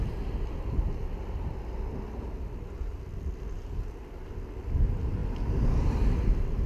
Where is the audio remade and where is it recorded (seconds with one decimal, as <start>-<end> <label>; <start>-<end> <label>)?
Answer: 0.0-6.7 recorded